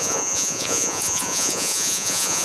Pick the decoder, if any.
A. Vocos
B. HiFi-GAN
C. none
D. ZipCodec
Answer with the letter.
A